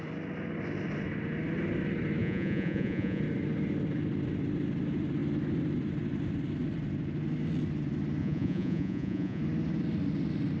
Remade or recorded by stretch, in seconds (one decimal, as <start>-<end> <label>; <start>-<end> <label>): 0.0-2.2 recorded; 2.2-3.2 remade; 3.2-8.2 recorded; 8.2-9.4 remade; 9.4-10.6 recorded